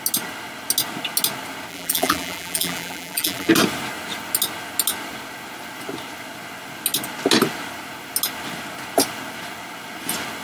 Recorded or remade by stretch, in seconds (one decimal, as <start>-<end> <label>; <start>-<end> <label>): 0.0-1.7 recorded; 1.7-3.5 remade; 3.5-10.4 recorded